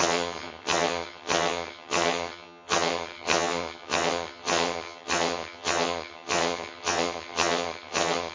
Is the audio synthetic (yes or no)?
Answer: yes